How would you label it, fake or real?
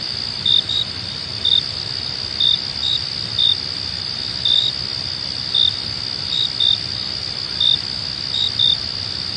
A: real